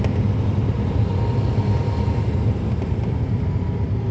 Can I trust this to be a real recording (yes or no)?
yes